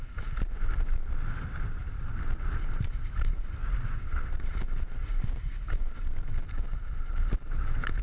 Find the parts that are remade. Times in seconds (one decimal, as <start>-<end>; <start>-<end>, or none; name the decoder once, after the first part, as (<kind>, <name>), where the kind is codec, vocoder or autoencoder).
1.8-2.8 (vocoder, BigVGAN v2); 6.3-8.0